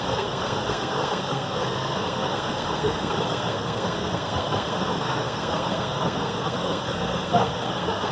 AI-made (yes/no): yes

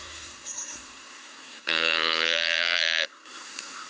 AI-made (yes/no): yes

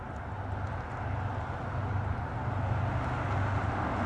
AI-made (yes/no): no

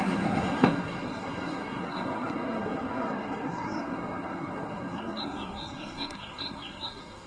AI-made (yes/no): yes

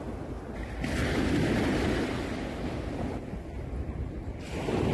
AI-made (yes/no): no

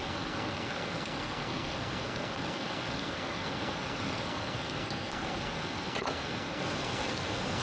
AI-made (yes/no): yes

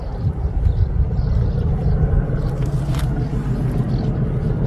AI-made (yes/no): no